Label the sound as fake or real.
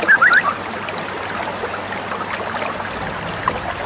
real